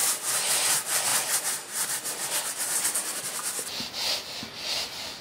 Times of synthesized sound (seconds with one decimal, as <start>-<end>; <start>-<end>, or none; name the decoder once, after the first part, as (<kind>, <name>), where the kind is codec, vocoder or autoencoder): none